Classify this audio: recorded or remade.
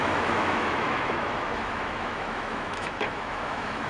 remade